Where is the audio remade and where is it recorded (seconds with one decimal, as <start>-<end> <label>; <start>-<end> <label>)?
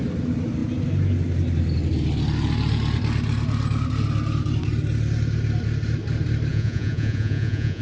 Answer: 0.0-6.5 recorded; 6.5-7.8 remade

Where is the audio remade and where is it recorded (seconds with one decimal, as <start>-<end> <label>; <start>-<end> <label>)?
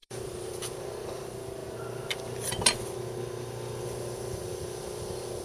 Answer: 0.0-0.5 remade; 0.5-5.4 recorded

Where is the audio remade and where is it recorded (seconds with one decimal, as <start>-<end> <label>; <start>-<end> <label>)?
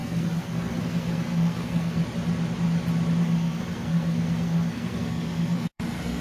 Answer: 0.0-2.0 remade; 2.0-3.2 recorded; 3.2-6.2 remade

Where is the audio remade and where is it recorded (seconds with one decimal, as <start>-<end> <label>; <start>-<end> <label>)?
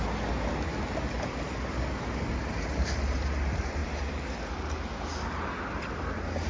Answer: 0.0-6.5 recorded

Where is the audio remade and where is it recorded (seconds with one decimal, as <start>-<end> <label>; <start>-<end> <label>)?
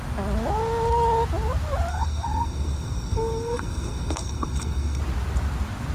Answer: 0.0-1.9 recorded; 1.9-5.0 remade; 5.0-5.9 recorded